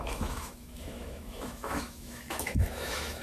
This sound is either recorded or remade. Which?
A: remade